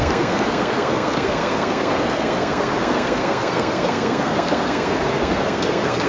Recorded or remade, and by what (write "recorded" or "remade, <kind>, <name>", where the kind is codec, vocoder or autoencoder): remade, codec, SNAC